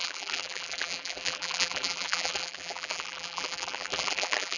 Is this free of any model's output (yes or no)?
no